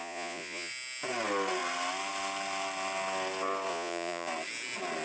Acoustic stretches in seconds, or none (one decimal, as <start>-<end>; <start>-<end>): 0.7-3.7; 4.3-5.0